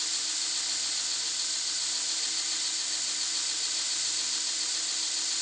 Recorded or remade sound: recorded